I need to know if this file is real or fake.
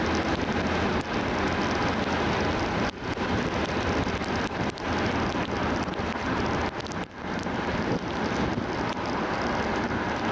real